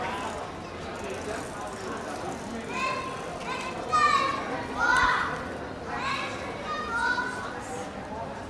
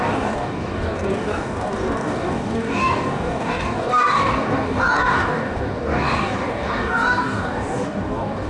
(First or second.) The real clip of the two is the first